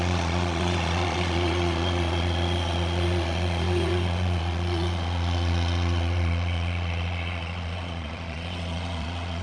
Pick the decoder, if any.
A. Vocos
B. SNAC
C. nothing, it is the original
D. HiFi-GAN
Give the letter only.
A